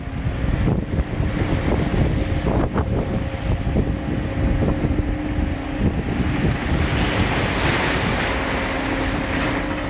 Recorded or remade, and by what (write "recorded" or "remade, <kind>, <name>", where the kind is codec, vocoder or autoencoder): recorded